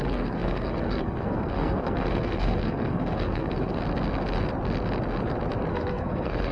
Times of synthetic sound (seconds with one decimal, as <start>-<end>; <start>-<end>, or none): 0.0-3.8; 5.7-6.5